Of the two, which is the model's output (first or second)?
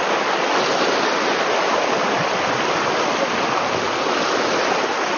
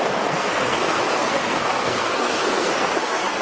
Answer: second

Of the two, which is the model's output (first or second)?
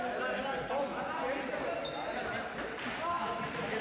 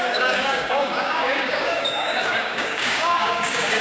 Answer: second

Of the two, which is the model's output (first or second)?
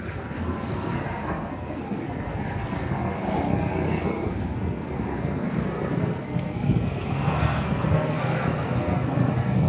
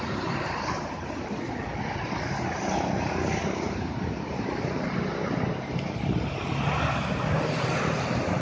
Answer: first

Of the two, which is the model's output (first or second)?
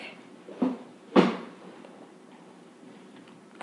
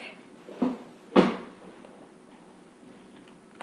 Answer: first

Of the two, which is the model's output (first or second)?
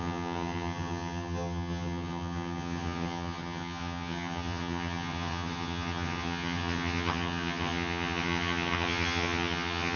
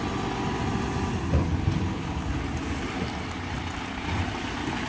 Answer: first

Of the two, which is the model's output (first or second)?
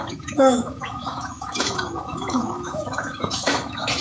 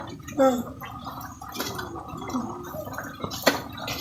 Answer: first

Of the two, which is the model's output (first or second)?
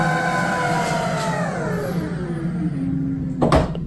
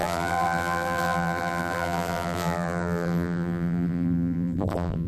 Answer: second